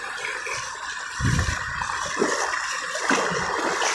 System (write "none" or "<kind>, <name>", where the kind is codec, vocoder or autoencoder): none